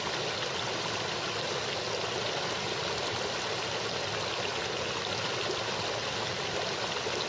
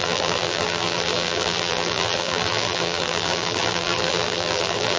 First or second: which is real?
first